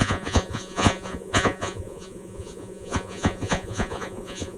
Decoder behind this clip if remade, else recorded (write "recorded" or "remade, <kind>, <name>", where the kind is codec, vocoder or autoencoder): remade, vocoder, Vocos